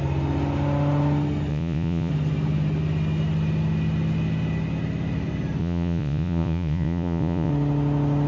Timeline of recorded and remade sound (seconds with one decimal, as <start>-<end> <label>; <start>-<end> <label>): 0.0-1.5 recorded; 1.5-2.1 remade; 2.1-5.6 recorded; 5.6-7.5 remade; 7.5-8.3 recorded